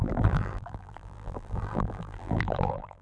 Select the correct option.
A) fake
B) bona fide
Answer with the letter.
A